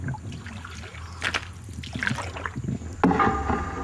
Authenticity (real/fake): real